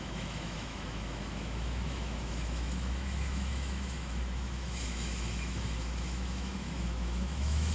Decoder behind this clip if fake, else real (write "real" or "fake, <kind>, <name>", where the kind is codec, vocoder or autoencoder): fake, autoencoder, DAC-VAE